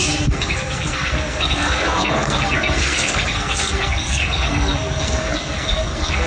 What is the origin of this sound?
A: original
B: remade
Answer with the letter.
B